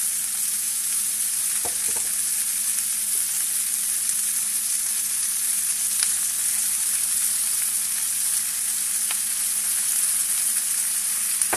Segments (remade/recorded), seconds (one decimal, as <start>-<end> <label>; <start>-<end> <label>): 0.0-0.5 recorded; 0.5-1.0 remade; 1.0-11.6 recorded